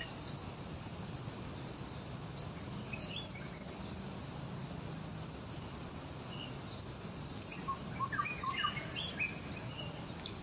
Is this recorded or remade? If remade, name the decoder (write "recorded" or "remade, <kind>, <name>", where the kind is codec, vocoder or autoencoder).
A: recorded